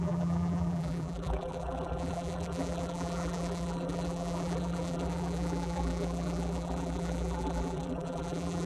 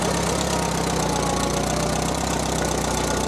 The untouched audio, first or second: second